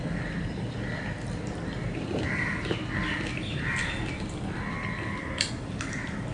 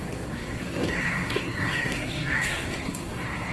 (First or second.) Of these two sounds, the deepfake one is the second